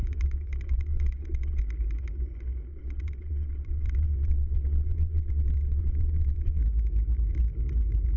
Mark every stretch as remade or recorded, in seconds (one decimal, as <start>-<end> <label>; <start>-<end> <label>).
0.0-1.6 remade; 1.6-2.7 recorded; 2.7-6.6 remade; 6.6-8.2 recorded